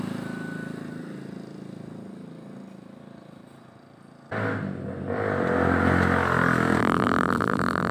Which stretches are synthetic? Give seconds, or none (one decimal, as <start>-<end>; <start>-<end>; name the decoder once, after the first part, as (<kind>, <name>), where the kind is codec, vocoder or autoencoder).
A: 6.8-7.9 (vocoder, BigVGAN v2)